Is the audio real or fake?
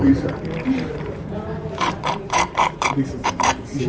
fake